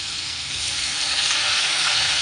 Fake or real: fake